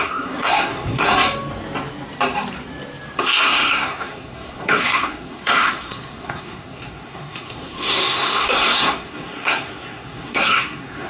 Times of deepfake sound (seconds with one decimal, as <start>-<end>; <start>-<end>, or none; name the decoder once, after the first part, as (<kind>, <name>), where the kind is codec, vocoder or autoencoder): 0.0-1.1 (codec, SNAC); 3.2-11.1